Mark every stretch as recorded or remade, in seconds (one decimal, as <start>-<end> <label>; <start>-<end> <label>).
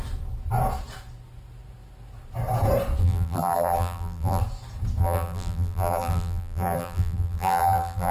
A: 0.0-3.0 recorded; 3.0-4.4 remade; 4.4-5.0 recorded; 5.0-8.1 remade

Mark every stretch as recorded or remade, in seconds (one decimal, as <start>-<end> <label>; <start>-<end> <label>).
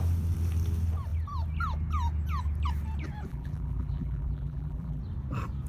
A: 0.0-3.3 recorded; 3.3-5.0 remade; 5.0-5.7 recorded